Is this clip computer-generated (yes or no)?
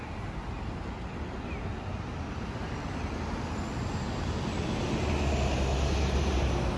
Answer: no